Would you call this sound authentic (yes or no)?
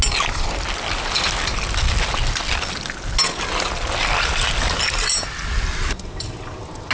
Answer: yes